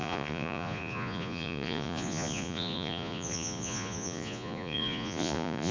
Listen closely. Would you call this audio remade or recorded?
remade